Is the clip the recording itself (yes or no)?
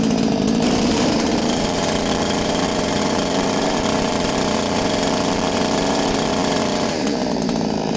no